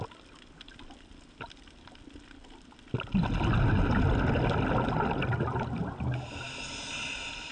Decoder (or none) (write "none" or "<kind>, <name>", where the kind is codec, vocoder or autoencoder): none